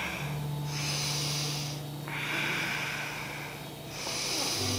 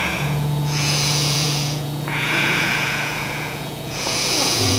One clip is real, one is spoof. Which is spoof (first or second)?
second